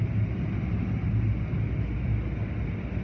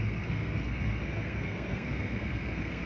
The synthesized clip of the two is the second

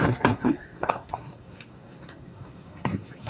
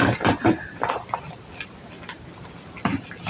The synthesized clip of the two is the first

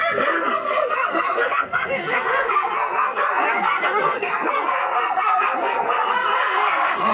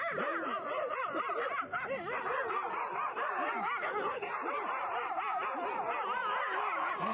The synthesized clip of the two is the first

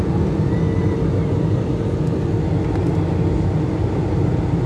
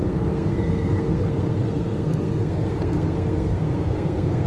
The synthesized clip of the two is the second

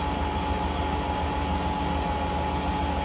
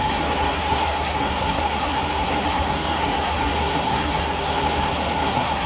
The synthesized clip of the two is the second